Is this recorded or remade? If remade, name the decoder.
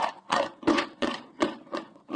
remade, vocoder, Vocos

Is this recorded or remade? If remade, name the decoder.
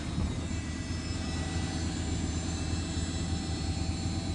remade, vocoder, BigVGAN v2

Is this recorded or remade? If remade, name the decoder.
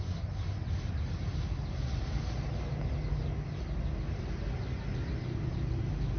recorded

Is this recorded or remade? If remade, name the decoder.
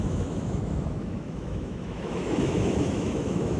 remade, autoencoder, DAC-VAE